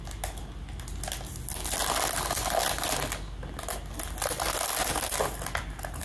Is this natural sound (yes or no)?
yes